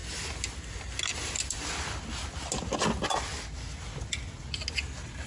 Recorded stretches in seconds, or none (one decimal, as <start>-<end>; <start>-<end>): 0.0-5.3